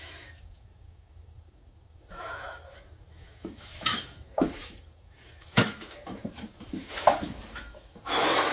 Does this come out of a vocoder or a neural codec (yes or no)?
yes